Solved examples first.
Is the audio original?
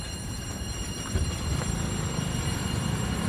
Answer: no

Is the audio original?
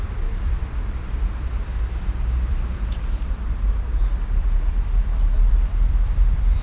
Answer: no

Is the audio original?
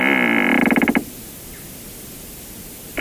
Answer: yes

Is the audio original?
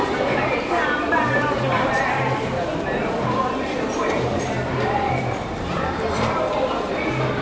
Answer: no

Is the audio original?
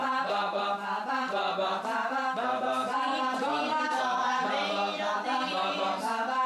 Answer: no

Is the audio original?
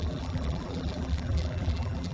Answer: no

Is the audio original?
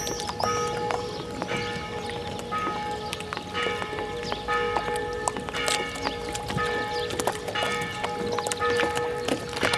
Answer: yes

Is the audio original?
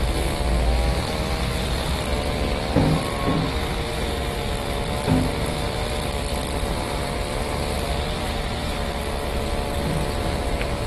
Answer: yes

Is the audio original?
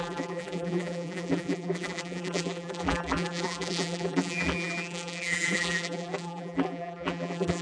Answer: no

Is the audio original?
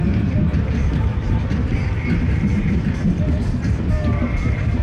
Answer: yes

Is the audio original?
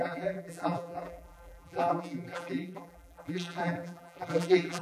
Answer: no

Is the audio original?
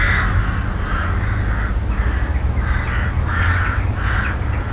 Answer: yes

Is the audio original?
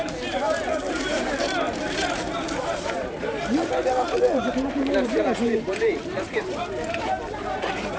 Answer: no